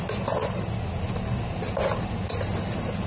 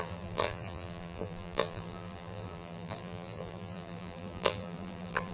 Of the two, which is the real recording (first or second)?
first